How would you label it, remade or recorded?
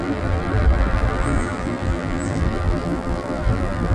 remade